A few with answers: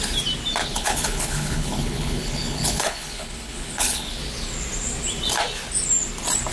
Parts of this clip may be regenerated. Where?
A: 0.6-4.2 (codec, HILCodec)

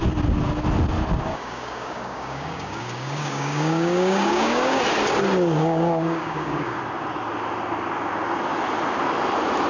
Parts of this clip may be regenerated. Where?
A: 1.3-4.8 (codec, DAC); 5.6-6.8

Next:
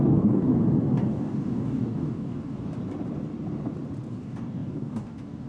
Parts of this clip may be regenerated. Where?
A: 0.0-0.5 (codec, DAC); 1.1-2.7; 4.1-5.5

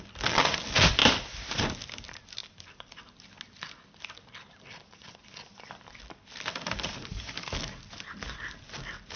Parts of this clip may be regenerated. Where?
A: 7.1-7.8 (codec, DAC)